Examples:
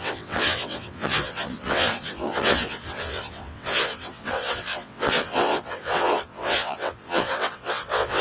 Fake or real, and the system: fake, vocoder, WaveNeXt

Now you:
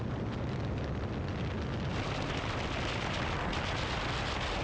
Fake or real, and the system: real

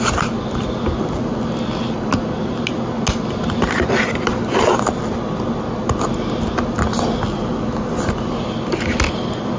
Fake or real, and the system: real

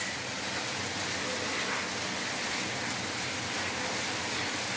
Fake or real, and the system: real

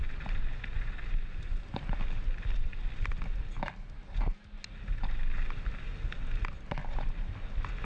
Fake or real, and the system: real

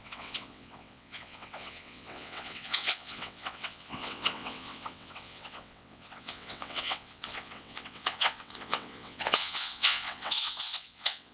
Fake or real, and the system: fake, vocoder, WaveNeXt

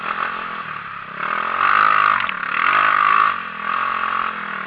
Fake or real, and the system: real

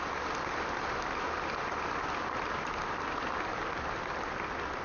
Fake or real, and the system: real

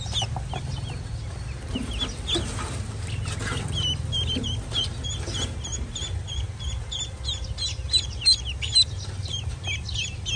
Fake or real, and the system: real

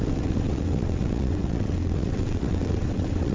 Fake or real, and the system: fake, vocoder, WaveNeXt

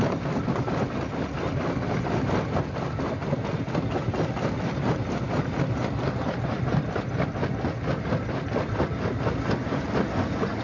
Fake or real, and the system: real